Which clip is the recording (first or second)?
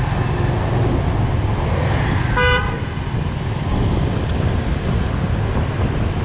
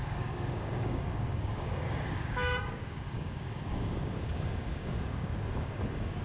first